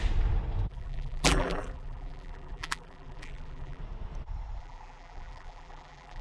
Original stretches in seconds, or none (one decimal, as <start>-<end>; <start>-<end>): 0.0-0.7; 3.8-4.6